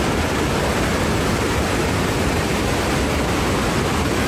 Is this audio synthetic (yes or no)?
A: no